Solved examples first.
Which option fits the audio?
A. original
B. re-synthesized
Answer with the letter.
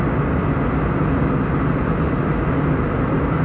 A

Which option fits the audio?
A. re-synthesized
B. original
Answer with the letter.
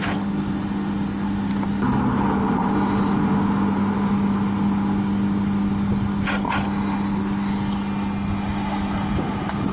B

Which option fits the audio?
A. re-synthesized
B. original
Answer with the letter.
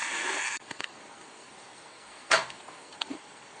A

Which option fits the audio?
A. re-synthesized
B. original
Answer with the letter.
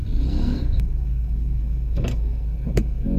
A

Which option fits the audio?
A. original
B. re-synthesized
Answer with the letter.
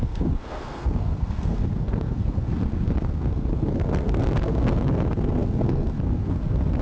B